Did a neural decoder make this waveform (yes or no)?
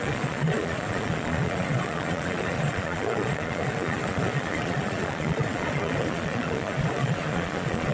yes